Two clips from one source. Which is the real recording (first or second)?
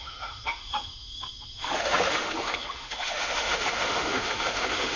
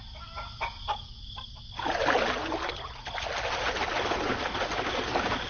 second